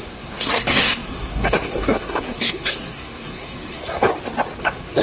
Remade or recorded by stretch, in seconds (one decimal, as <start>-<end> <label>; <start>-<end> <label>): 0.0-4.1 remade; 4.1-4.6 recorded; 4.6-5.0 remade